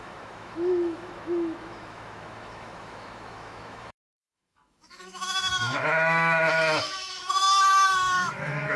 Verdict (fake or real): fake